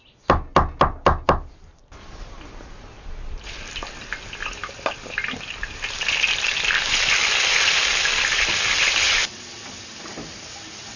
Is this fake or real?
real